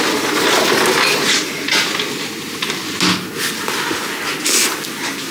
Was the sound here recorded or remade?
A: recorded